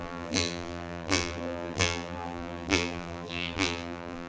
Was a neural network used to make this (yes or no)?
yes